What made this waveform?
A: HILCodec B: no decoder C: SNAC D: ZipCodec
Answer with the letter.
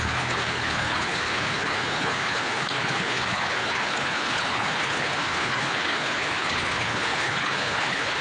A